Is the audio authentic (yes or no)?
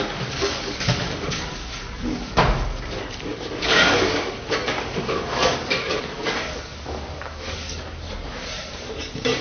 no